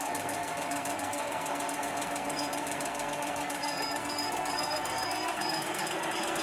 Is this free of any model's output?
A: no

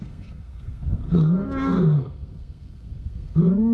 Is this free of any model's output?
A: no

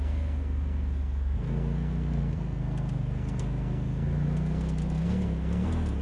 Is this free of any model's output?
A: no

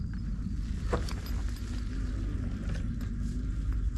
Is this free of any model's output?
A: yes